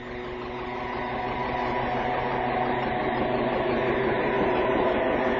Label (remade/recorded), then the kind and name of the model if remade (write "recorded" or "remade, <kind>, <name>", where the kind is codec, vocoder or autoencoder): recorded